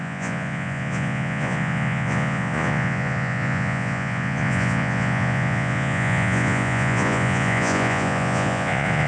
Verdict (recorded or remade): remade